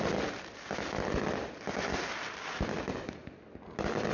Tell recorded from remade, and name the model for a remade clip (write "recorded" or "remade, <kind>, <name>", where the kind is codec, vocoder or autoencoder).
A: recorded